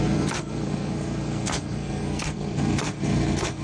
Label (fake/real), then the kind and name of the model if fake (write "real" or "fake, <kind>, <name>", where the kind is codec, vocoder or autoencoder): fake, codec, SNAC